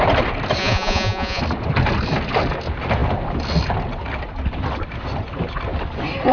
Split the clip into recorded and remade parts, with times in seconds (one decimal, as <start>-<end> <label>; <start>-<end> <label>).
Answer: 0.0-0.6 recorded; 0.6-1.4 remade; 1.4-6.3 recorded